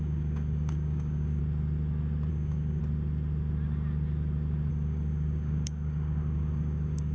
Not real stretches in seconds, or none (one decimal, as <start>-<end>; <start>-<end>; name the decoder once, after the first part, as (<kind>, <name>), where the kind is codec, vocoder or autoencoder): 0.0-1.4 (codec, DAC); 2.3-2.8; 4.7-7.1